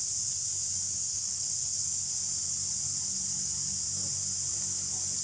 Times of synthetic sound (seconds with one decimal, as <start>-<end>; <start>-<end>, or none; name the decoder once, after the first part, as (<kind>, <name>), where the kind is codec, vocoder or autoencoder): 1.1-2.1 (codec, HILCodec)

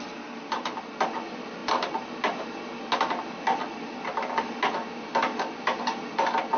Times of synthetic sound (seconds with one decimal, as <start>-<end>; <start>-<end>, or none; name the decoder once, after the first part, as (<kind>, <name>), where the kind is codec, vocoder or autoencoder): none

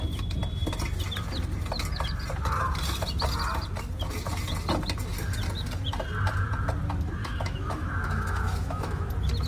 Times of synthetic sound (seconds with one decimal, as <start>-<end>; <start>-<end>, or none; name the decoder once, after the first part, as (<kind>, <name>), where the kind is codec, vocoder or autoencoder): 7.2-9.1 (autoencoder, DAC-VAE)